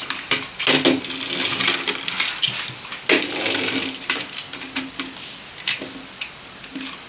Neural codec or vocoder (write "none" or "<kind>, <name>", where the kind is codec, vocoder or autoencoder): none